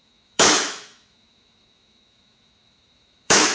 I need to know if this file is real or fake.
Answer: fake